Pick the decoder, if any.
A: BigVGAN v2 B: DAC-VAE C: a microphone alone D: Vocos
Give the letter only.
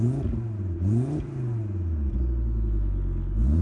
C